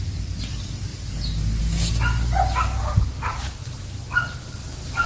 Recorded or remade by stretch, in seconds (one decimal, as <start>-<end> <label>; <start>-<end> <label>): 0.0-5.1 recorded